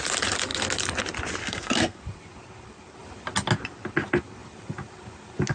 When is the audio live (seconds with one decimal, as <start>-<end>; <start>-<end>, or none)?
0.0-1.4; 2.0-5.5